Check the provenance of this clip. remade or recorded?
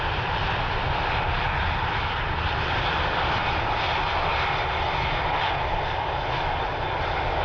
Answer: recorded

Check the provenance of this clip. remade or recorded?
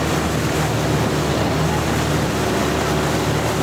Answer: recorded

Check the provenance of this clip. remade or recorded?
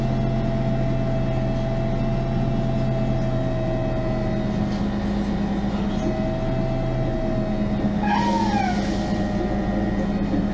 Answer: recorded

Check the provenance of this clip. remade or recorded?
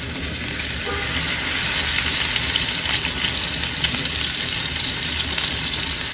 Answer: recorded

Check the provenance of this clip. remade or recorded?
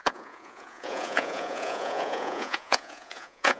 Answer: remade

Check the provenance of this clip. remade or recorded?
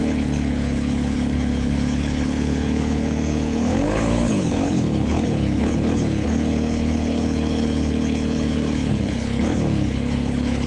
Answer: remade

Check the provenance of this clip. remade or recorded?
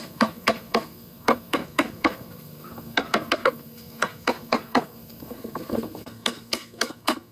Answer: remade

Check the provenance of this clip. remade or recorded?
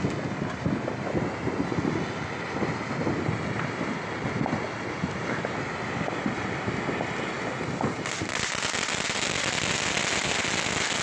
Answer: recorded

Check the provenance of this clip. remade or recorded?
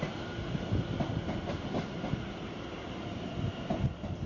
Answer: recorded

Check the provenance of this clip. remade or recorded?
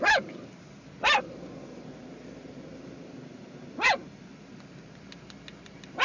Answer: recorded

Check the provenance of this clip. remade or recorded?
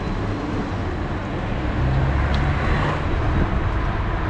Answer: recorded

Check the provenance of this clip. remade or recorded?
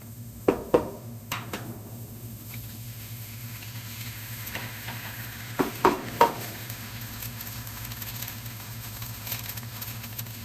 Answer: remade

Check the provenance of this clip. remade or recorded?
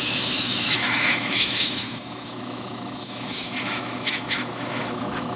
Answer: remade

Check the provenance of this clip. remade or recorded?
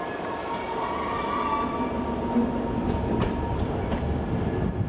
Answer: recorded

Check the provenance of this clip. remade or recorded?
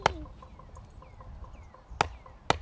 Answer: recorded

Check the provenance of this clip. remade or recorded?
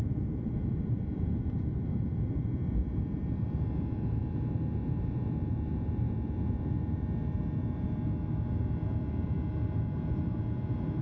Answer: remade